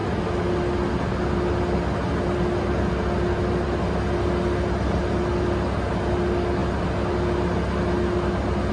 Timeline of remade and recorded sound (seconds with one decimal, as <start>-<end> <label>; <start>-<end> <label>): 0.0-8.7 recorded